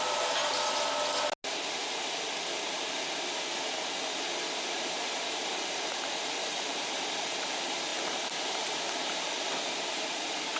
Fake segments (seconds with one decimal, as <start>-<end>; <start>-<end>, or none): 0.0-0.4; 4.1-10.6